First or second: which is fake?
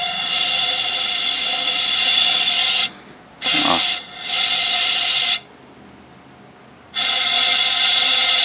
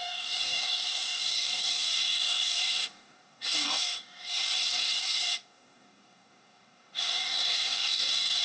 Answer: second